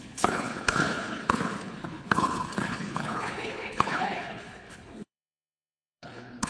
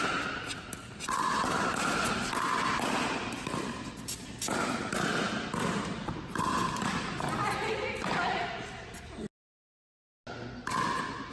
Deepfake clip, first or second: first